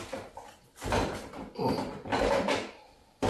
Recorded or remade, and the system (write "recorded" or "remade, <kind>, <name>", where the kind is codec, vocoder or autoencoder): recorded